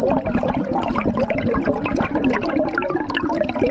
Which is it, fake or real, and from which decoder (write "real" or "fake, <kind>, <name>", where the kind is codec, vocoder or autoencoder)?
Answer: real